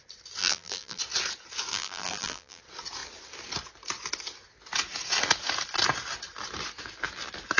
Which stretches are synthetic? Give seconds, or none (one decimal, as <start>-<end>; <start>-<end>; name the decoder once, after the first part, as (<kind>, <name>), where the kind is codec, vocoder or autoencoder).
0.4-1.0 (vocoder, BigVGAN v2); 1.7-2.6